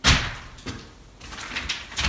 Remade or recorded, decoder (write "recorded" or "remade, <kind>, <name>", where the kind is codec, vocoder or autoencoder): recorded